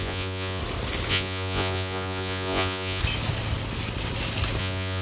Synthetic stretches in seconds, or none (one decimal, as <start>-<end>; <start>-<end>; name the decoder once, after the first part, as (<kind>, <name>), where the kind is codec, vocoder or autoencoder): 0.0-0.6 (vocoder, Vocos); 1.1-3.0; 4.6-5.0

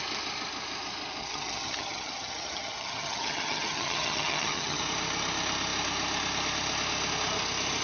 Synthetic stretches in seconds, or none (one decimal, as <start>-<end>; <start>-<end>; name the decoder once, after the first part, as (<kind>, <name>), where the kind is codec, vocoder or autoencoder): 1.2-4.8 (vocoder, HiFi-GAN)

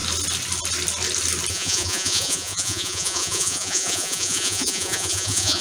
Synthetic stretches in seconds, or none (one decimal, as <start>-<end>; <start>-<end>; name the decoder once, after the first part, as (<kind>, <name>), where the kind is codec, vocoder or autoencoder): 1.5-5.6 (vocoder, Vocos)

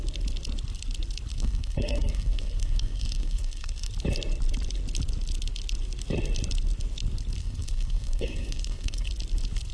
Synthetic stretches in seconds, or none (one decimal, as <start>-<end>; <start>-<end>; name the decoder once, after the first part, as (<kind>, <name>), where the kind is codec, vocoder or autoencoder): 1.3-3.9 (codec, SNAC); 7.4-9.1

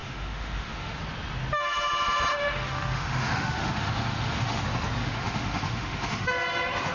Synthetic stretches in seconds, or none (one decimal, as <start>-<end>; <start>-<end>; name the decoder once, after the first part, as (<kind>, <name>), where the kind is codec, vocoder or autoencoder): 0.0-1.0 (autoencoder, DAC-VAE); 2.3-4.6; 5.0-6.3

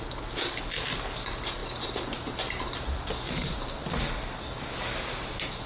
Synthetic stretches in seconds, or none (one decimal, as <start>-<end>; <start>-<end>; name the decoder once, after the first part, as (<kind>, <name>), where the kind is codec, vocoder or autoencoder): none